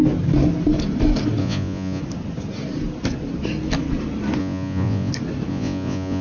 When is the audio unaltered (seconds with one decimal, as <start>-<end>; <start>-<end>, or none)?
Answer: 0.0-1.4; 2.0-4.4; 5.1-5.5